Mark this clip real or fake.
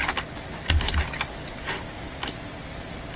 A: real